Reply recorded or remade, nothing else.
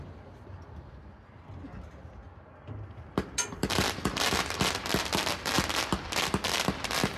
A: recorded